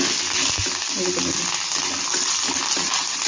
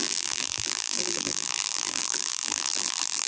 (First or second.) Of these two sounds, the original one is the first